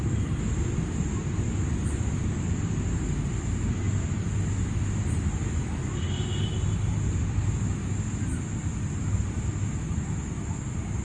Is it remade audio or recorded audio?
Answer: recorded